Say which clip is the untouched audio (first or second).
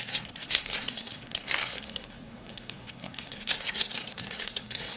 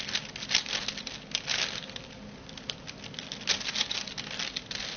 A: second